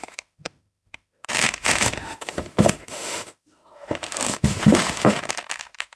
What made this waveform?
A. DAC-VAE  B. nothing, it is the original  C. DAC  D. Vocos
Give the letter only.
A